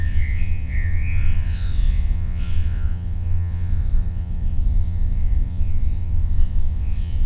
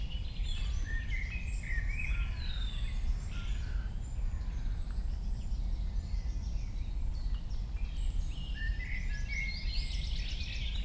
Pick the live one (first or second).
second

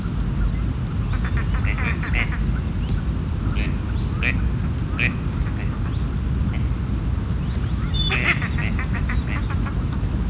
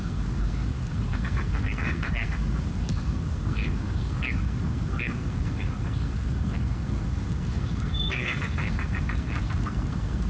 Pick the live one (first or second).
first